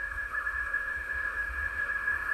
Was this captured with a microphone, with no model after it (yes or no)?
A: no